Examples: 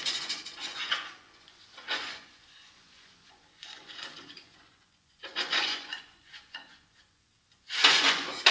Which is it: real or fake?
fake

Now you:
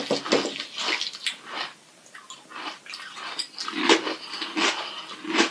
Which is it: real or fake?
real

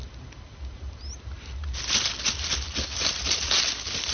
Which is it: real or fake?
real